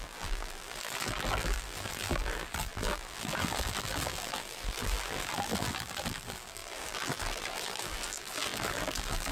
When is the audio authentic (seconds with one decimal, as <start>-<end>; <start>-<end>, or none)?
none